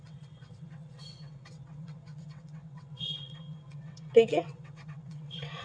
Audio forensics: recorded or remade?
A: remade